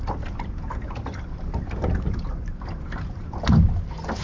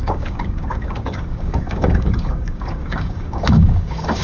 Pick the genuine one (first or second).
first